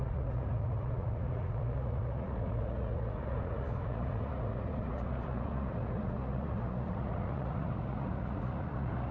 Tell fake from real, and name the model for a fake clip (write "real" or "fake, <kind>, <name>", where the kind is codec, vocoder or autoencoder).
fake, vocoder, Vocos